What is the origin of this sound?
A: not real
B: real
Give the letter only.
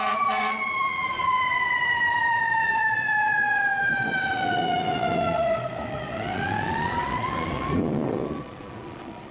A